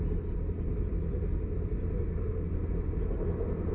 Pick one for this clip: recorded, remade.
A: recorded